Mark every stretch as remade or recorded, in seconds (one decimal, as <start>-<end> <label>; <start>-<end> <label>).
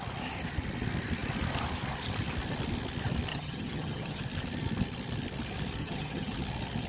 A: 0.0-3.3 recorded; 3.3-4.2 remade; 4.2-5.8 recorded; 5.8-6.3 remade; 6.3-6.9 recorded